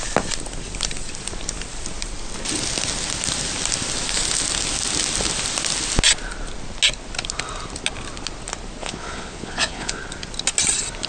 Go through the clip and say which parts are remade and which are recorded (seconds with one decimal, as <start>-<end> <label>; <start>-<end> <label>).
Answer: 0.0-8.8 recorded; 8.8-10.0 remade; 10.0-11.1 recorded